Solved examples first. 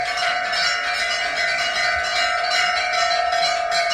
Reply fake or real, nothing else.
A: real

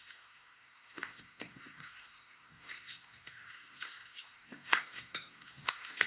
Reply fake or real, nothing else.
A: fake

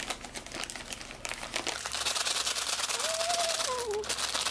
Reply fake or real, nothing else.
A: real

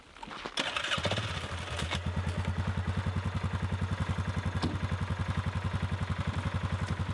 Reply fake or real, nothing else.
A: real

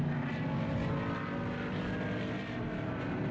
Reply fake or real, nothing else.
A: real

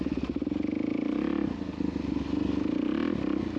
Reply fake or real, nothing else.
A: real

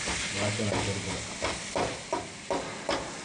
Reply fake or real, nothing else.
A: real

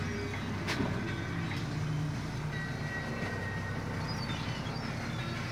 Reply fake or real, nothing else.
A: real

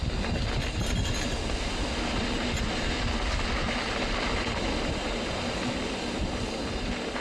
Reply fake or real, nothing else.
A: real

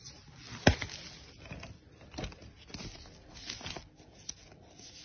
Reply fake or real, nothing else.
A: real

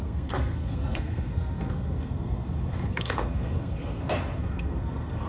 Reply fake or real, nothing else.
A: fake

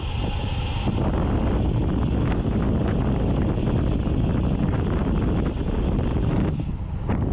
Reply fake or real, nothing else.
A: real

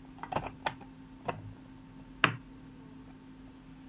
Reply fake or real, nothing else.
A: real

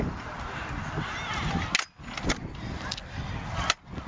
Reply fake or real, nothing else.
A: real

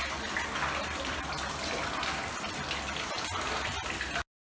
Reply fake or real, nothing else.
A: real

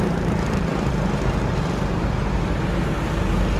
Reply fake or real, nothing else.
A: real